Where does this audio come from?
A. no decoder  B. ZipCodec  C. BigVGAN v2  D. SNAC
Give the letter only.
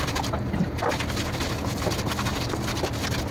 A